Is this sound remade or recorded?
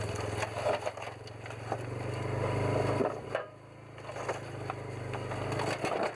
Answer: recorded